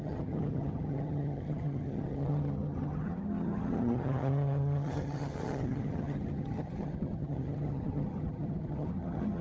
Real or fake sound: fake